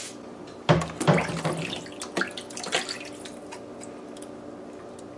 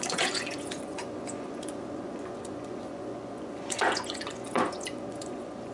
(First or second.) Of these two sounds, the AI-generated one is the second